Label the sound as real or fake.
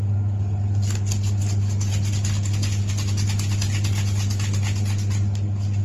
real